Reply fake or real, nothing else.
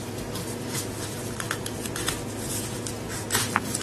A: real